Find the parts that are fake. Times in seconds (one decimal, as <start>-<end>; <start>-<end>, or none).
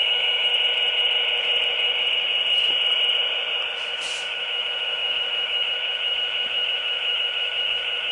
0.0-0.5; 4.1-8.1